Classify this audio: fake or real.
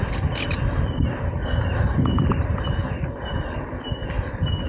real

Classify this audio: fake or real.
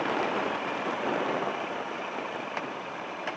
fake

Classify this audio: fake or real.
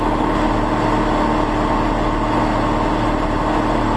real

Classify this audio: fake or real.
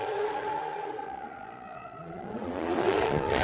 fake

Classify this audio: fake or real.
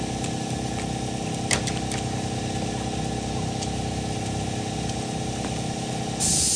real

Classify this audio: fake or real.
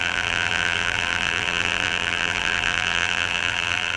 fake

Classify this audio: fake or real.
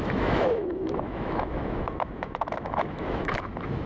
fake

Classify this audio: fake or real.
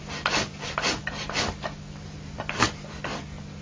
real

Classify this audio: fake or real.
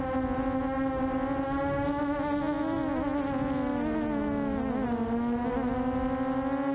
real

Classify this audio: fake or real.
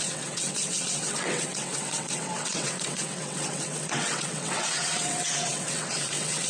fake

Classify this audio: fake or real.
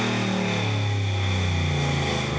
real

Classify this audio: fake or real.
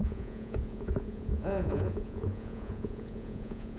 fake